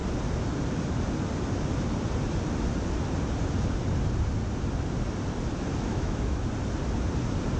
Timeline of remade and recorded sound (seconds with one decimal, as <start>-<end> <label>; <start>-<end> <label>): 0.0-5.9 recorded; 5.9-6.5 remade; 6.5-7.6 recorded